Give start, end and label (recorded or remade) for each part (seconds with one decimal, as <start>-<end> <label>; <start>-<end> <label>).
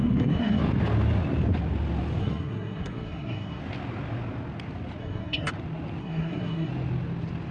0.0-0.6 remade; 0.6-2.2 recorded; 2.2-3.6 remade; 3.6-5.0 recorded; 5.0-5.5 remade; 5.5-6.0 recorded; 6.0-6.7 remade; 6.7-7.5 recorded